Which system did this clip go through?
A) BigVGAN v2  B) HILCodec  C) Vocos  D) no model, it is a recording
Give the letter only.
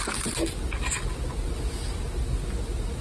D